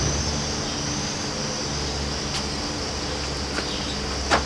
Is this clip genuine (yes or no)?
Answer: yes